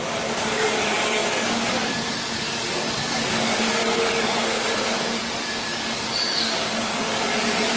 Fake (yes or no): yes